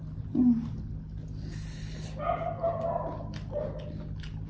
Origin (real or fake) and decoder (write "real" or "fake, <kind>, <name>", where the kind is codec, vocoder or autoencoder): real